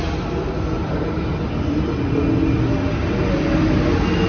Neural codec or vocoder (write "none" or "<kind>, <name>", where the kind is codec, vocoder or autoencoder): none